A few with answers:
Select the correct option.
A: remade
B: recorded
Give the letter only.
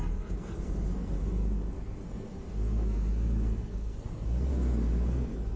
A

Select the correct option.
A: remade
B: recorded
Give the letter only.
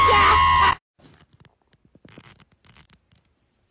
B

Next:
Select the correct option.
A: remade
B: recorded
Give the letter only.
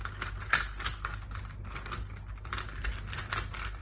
B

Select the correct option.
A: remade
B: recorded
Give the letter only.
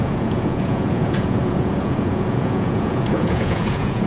A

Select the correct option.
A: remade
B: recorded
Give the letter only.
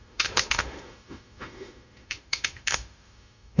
A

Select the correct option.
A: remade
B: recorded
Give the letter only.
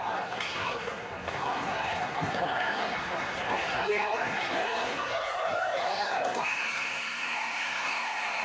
A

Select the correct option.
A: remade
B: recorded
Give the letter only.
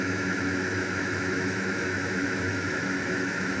A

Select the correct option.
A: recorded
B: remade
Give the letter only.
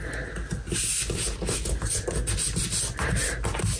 A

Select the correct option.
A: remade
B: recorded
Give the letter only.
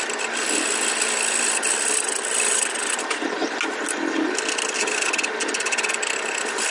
B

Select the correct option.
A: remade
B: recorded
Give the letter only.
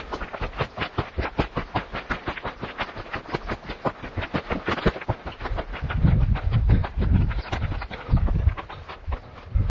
B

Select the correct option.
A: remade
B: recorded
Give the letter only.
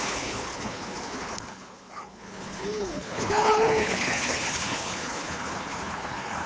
A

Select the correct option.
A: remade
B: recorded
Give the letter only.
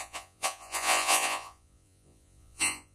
A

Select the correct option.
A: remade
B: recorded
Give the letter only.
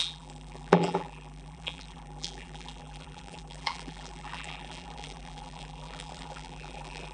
A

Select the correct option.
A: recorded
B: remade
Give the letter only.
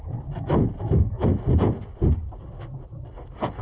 A